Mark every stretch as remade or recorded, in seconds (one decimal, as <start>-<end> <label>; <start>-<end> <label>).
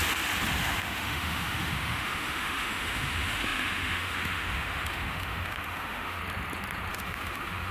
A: 0.0-0.6 recorded; 0.6-6.2 remade; 6.2-6.9 recorded; 6.9-7.7 remade